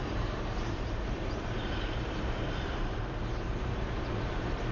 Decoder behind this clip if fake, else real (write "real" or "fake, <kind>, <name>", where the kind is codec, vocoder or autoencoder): fake, vocoder, BigVGAN v2